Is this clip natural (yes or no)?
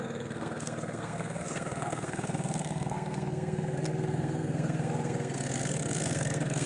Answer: no